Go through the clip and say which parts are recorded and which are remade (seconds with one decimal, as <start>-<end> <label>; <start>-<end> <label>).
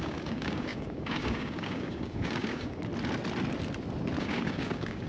0.0-2.9 remade; 2.9-4.2 recorded; 4.2-5.1 remade